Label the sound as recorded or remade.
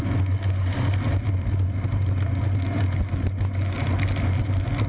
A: recorded